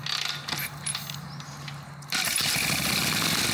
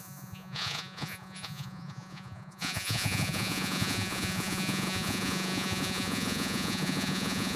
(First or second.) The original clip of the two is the first